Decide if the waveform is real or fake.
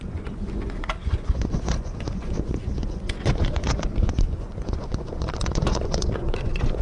fake